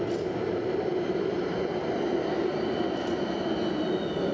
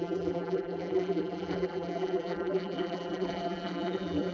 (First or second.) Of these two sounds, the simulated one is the second